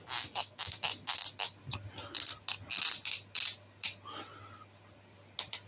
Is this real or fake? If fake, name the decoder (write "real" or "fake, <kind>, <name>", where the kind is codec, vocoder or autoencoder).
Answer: real